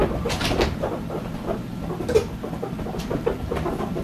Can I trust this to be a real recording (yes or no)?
yes